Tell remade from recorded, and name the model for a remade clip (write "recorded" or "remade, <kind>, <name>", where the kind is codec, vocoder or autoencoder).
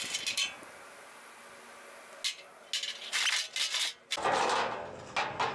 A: recorded